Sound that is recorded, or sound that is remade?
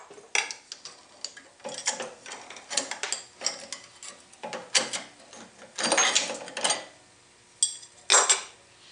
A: recorded